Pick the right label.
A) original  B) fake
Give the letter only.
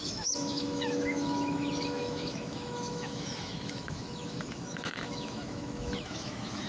B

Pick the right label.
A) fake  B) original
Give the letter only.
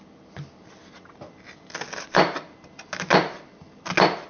B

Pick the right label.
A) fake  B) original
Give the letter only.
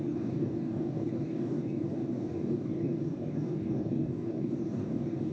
A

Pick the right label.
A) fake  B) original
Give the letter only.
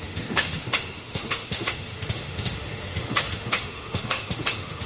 A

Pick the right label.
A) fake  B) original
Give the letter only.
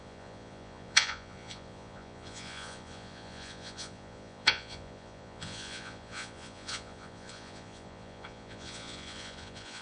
A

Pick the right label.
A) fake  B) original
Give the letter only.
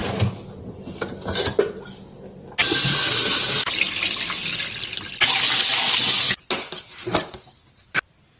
B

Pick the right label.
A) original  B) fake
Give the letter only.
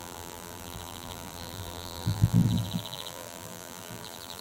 B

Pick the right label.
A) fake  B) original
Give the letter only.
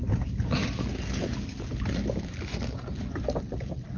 B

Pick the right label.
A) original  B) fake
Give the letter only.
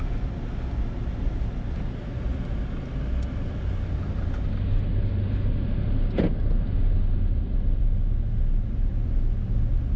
A